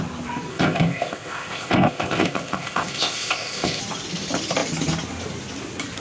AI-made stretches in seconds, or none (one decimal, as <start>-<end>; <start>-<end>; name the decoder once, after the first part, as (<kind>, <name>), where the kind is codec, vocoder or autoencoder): 0.5-3.8 (codec, ZipCodec)